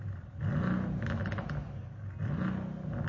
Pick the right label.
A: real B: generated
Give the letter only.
A